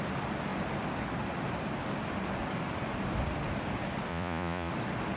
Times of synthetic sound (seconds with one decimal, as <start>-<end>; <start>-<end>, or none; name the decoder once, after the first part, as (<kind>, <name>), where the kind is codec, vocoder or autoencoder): 4.1-4.7 (vocoder, Vocos)